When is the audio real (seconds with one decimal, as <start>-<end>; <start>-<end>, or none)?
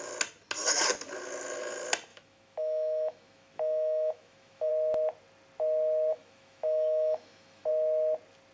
0.0-2.1; 4.7-6.1; 7.7-8.5